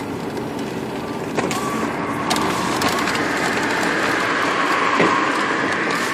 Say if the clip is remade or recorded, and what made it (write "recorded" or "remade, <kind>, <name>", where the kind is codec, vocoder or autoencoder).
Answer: recorded